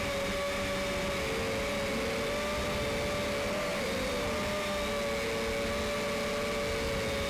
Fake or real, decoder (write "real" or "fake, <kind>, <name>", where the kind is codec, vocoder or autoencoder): real